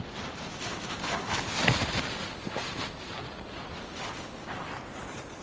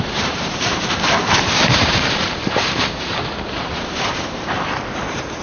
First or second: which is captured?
first